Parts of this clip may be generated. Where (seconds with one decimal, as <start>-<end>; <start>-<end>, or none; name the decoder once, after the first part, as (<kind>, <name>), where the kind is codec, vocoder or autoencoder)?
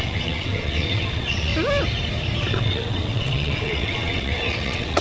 0.0-1.5 (vocoder, WaveNeXt); 2.5-5.0